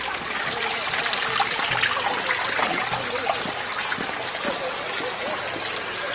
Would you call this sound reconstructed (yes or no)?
no